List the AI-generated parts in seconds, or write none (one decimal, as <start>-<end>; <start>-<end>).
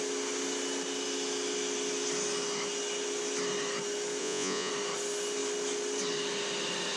4.2-4.7